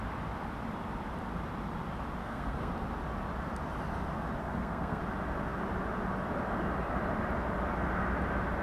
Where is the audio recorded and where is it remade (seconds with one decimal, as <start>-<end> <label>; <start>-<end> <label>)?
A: 0.0-2.2 recorded; 2.2-2.7 remade; 2.7-4.4 recorded; 4.4-5.0 remade; 5.0-8.6 recorded